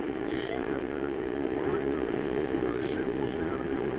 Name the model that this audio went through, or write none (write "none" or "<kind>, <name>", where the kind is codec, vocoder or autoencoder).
vocoder, Vocos